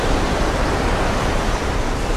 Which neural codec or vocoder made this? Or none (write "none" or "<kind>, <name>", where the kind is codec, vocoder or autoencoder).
none